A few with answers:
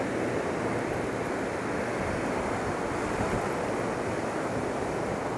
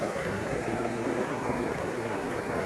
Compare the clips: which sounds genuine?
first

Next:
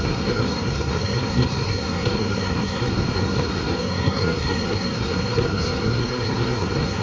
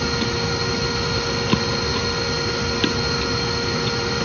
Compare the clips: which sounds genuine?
second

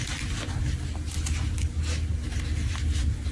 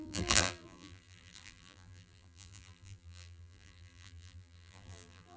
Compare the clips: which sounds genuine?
first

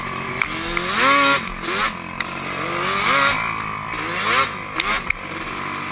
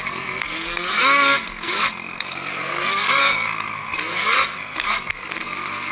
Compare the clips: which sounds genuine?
first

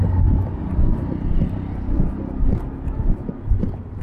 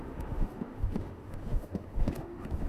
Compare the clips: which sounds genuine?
first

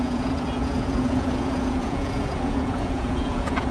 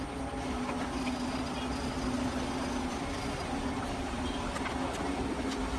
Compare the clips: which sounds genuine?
second